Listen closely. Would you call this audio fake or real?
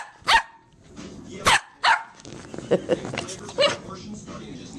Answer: real